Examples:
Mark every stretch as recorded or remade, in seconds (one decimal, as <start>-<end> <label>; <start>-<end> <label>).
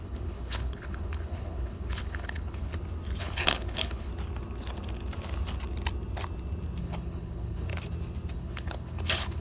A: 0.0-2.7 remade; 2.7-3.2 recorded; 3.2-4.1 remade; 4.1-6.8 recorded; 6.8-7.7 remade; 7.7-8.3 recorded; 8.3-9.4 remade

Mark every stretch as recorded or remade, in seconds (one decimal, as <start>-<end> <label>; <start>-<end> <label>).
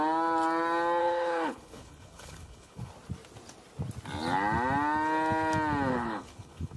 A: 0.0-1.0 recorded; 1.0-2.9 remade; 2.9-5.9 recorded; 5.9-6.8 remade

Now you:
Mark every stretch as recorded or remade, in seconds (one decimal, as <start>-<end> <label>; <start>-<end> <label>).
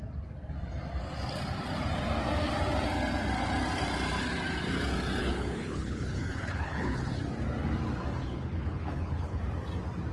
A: 0.0-5.2 recorded; 5.2-7.1 remade; 7.1-8.2 recorded; 8.2-9.4 remade; 9.4-10.1 recorded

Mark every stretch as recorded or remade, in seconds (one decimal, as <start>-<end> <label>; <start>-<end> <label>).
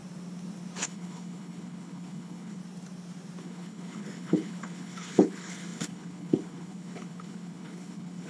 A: 0.0-0.8 recorded; 0.8-2.6 remade; 2.6-3.4 recorded; 3.4-8.3 remade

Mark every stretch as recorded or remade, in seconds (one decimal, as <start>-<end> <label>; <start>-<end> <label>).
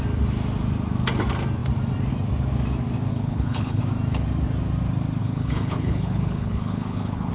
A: 0.0-3.1 recorded; 3.1-3.8 remade; 3.8-5.2 recorded; 5.2-7.3 remade